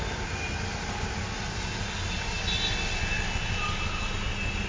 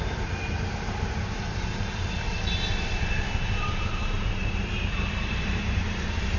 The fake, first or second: second